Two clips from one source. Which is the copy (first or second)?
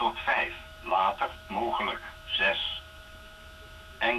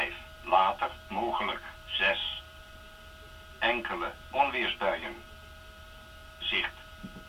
first